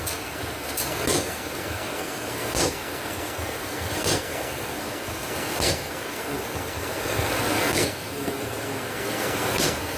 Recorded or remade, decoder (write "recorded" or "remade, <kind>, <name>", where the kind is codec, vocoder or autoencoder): remade, codec, SNAC